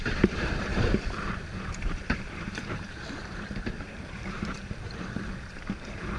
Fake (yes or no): yes